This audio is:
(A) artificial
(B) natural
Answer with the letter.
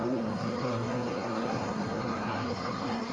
A